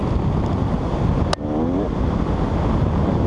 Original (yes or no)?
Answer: yes